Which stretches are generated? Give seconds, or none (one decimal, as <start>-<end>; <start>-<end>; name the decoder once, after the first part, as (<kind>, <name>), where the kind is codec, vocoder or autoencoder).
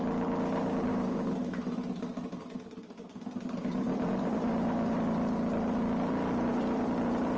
0.9-1.6 (autoencoder, DAC-VAE)